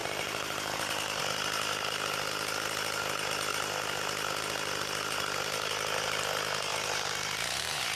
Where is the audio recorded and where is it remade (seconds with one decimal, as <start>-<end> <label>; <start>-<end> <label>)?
0.0-1.2 remade; 1.2-6.7 recorded; 6.7-7.2 remade; 7.2-8.0 recorded